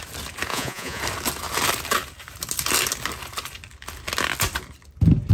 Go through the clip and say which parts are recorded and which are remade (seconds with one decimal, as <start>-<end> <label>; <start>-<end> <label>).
0.0-0.5 recorded; 0.5-1.0 remade; 1.0-5.3 recorded